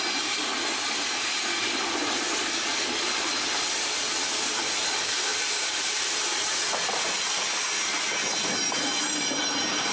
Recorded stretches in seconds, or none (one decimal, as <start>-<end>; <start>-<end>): 0.0-9.9